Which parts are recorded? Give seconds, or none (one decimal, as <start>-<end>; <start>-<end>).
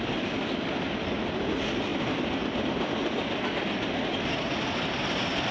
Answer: 0.0-5.5